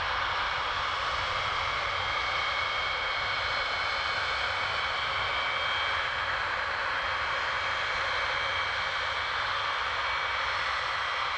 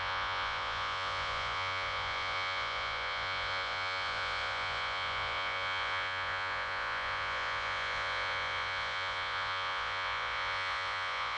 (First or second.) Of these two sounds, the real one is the first